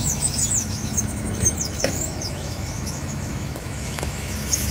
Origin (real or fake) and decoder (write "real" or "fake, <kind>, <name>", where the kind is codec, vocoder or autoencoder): fake, autoencoder, DAC-VAE